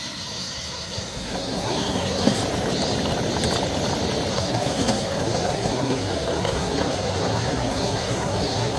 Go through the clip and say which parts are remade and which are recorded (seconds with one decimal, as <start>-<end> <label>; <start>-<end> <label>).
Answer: 0.0-2.4 remade; 2.4-4.3 recorded; 4.3-8.8 remade